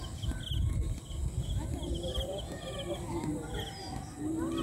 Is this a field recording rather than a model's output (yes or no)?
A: yes